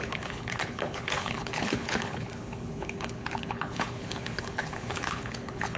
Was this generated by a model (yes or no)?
yes